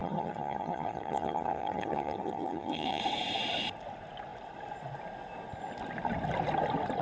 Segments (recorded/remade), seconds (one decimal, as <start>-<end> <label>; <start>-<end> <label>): 0.0-3.0 remade; 3.0-7.0 recorded